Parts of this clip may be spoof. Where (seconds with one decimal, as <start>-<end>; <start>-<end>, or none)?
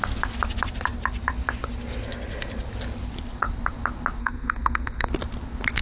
4.2-5.1